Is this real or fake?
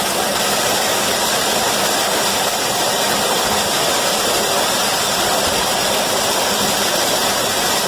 fake